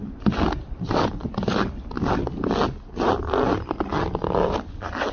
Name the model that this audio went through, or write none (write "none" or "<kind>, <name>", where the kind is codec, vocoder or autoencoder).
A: none